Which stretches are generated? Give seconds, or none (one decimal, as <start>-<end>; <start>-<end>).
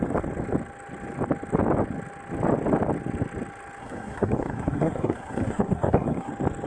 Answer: 3.8-6.3